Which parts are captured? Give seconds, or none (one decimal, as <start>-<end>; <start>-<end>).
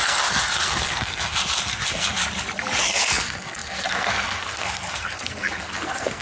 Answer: 2.2-2.8